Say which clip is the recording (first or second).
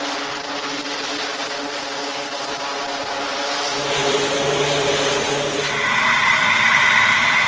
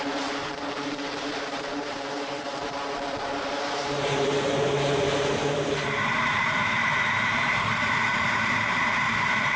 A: first